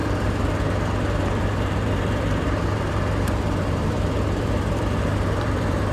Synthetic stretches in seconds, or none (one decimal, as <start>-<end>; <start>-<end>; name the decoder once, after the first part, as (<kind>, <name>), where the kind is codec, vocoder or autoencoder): 0.0-5.9 (vocoder, BigVGAN v2)